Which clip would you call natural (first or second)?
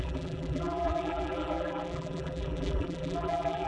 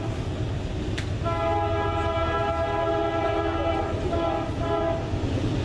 second